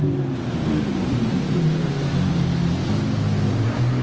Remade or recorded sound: recorded